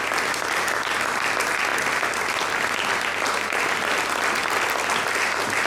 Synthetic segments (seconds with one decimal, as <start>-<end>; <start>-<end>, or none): none